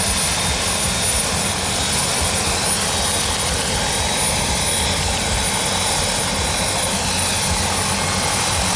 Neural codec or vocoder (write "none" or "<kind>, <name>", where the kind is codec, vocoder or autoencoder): none